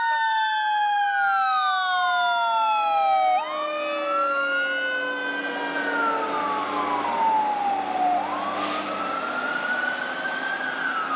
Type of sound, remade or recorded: recorded